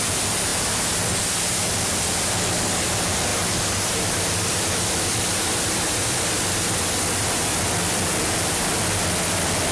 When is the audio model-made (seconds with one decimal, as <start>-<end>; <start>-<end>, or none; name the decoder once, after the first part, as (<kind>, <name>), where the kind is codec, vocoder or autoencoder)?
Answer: 3.3-6.3 (vocoder, BigVGAN v2)